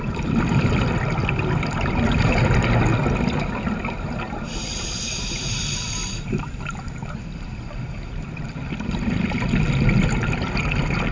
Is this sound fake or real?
real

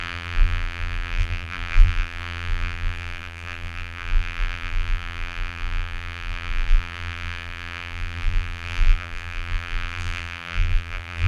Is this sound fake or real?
fake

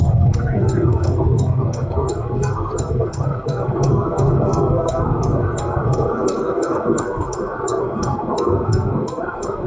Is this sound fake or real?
fake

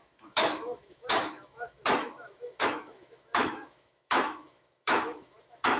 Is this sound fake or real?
fake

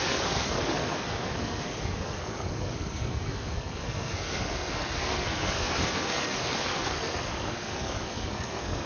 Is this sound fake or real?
fake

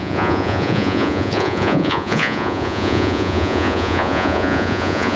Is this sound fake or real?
fake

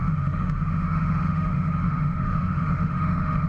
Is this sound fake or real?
fake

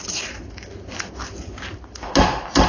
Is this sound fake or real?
real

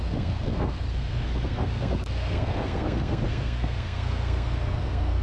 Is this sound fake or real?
fake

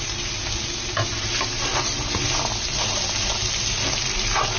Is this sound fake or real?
real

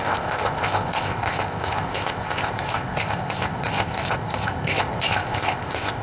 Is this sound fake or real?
fake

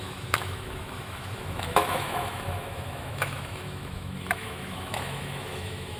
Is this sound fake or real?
fake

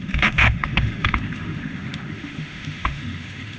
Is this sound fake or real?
fake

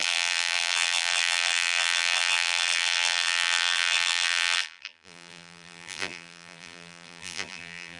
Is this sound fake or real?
fake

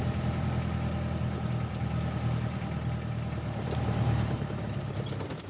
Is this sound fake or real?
real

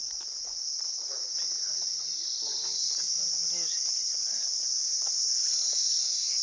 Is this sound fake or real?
real